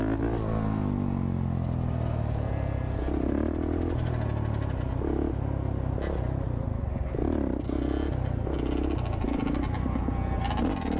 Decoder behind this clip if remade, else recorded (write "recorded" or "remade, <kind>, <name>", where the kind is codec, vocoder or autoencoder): recorded